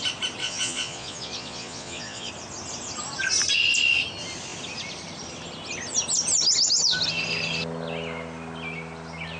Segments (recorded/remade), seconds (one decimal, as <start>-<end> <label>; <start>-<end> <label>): 0.0-0.4 recorded; 0.4-2.3 remade; 2.3-9.4 recorded